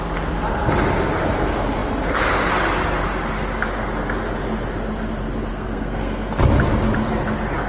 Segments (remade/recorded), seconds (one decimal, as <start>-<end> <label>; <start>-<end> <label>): 0.0-5.5 recorded; 5.5-6.3 remade; 6.3-7.7 recorded